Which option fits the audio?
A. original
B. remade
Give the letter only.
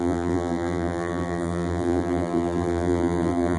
B